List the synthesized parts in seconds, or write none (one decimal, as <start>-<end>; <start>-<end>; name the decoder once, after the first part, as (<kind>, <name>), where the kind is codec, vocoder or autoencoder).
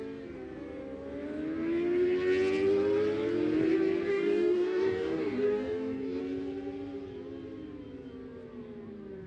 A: 4.1-6.2 (codec, DAC)